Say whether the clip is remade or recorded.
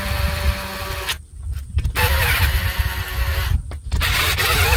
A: remade